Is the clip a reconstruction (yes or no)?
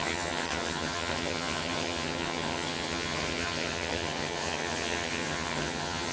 yes